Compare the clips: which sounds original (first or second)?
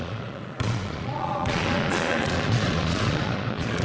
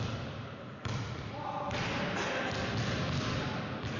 second